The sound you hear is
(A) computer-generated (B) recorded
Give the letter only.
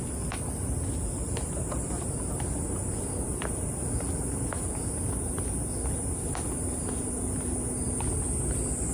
B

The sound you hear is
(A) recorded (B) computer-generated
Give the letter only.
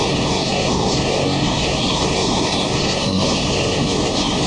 B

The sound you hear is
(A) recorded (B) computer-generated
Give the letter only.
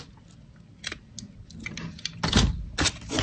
A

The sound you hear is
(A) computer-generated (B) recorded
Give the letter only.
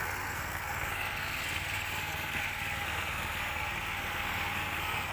A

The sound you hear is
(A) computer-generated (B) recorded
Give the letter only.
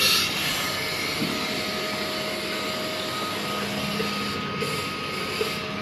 B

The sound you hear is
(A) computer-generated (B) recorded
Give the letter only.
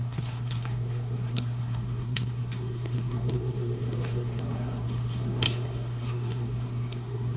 A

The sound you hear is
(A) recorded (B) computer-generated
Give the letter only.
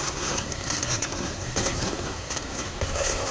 B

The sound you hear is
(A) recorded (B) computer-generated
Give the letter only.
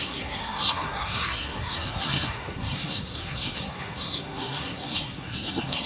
B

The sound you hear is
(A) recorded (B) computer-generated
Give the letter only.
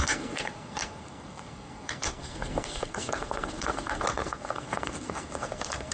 B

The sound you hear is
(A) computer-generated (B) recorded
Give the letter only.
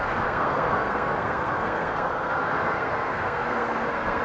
A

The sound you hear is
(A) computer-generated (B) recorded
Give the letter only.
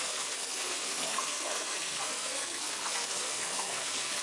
A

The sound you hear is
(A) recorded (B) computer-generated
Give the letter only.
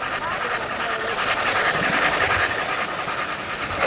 A